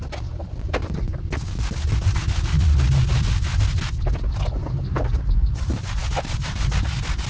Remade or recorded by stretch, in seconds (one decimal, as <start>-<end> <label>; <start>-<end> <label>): 0.0-7.3 recorded